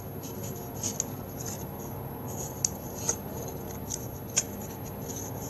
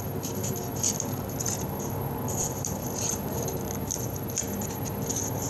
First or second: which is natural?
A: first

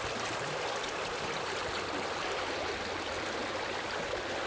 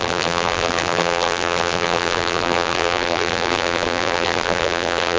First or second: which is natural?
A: first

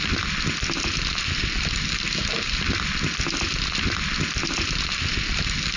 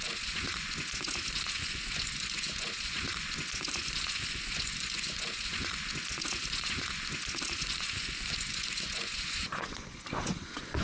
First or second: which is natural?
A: first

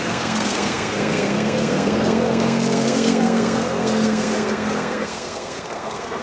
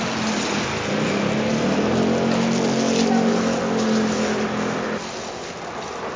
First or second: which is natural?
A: second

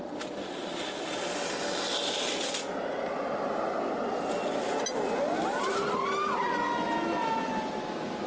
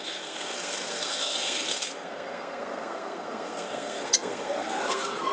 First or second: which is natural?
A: first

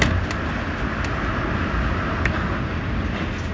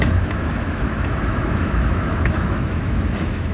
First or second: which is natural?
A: first